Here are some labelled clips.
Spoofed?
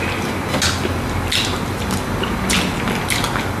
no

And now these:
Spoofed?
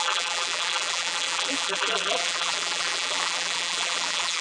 yes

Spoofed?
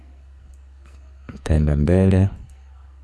yes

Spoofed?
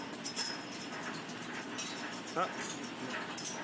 no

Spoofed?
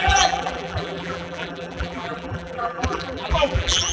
yes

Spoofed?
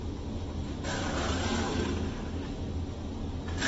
no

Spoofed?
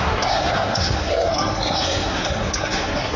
yes